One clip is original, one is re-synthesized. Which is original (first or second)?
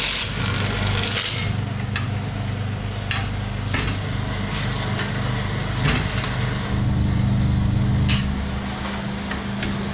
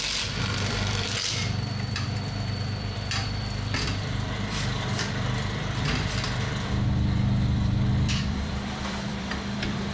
first